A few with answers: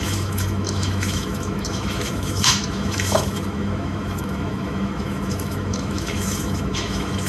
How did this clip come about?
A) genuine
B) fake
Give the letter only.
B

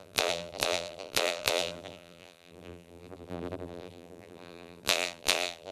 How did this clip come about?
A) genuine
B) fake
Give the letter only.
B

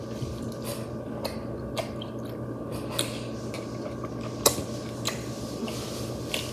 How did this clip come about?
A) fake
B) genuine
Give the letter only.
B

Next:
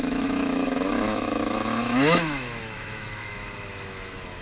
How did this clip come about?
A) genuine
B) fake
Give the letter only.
B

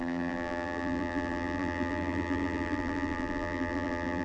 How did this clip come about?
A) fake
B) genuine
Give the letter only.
A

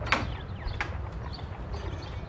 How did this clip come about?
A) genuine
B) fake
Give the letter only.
A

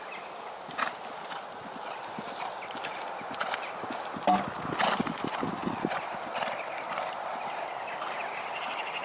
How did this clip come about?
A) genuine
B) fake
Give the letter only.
A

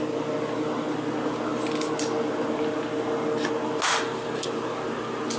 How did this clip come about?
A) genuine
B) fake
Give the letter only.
A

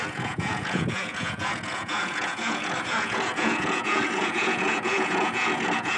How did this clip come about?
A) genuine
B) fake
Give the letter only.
B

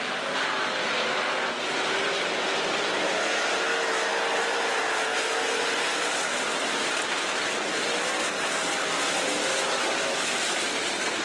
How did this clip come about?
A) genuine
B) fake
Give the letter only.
A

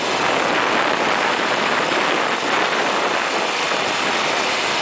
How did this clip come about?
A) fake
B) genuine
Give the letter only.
B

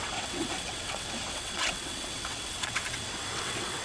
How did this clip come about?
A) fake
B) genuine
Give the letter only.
A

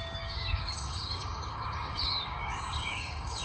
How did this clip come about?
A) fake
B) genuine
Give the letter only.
A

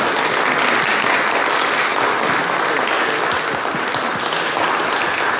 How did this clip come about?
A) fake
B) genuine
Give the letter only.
B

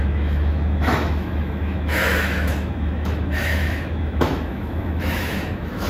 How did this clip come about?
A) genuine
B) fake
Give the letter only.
B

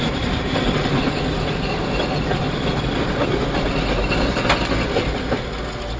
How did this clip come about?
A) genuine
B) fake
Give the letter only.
A